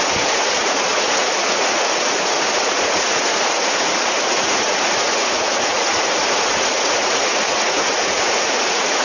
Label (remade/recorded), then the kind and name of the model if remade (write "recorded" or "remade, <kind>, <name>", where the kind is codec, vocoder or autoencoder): remade, vocoder, Vocos